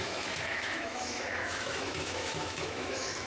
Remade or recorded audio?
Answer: remade